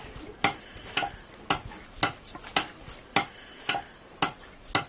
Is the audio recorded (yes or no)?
yes